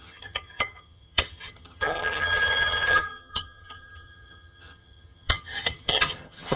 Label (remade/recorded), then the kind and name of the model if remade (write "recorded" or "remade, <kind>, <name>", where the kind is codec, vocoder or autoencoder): remade, vocoder, HiFi-GAN